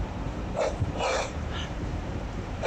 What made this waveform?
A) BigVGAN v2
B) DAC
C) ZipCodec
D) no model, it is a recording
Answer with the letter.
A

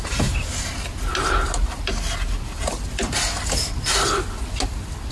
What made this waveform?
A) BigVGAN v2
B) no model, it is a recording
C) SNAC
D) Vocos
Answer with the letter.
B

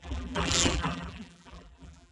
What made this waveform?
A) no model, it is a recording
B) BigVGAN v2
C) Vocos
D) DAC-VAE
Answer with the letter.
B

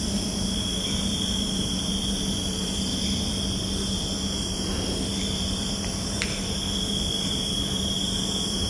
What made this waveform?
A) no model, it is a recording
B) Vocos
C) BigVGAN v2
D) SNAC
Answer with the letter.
C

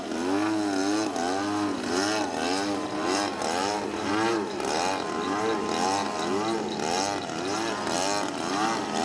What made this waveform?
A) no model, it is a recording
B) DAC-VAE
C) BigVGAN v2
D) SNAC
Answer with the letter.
A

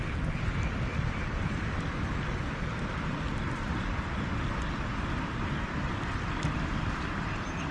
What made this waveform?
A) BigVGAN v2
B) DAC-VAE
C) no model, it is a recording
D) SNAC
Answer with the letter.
C